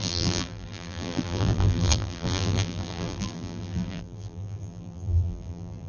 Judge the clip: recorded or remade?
remade